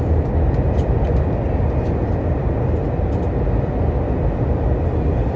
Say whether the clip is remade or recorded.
recorded